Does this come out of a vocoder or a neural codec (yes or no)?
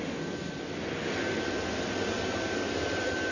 yes